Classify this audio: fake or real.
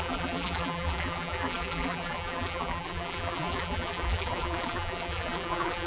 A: fake